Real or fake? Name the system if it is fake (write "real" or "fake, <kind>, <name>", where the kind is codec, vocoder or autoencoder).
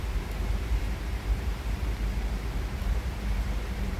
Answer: fake, vocoder, BigVGAN v2